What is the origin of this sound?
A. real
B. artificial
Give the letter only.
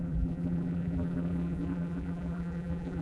B